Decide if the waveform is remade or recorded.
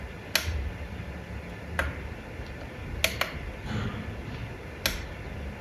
recorded